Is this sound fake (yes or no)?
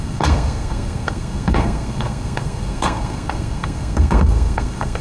yes